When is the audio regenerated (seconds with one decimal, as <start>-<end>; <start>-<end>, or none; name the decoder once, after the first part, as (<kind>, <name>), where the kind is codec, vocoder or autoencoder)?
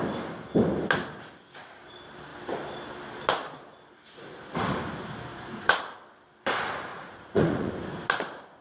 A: 5.3-5.8 (vocoder, Vocos); 6.9-7.7